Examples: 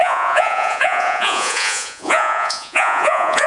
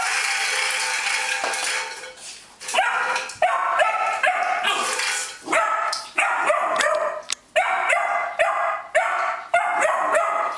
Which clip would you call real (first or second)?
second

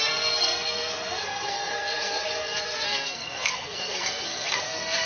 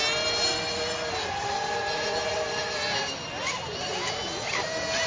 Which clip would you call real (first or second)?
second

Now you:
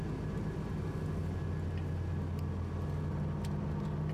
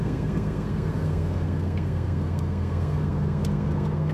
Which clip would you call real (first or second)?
first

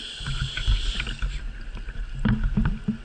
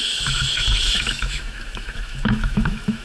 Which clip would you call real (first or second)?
first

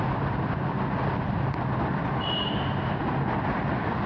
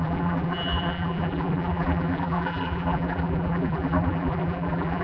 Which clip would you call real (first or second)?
first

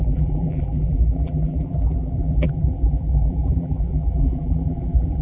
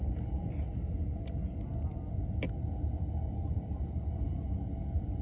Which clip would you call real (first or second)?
second